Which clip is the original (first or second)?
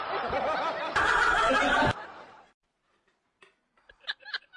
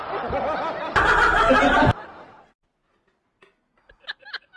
second